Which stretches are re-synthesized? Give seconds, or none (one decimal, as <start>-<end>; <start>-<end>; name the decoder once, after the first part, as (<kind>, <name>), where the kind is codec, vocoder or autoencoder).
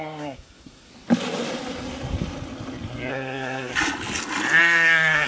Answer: 0.0-0.9 (codec, SNAC); 3.1-3.7; 4.6-5.3